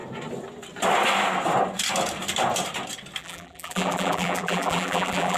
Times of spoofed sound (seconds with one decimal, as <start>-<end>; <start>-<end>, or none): 3.2-5.4